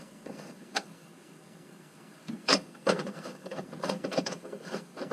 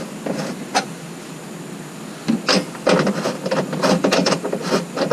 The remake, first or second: first